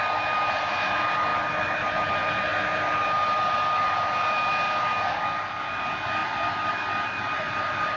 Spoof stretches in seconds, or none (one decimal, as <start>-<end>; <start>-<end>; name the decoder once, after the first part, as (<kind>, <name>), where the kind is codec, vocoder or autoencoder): none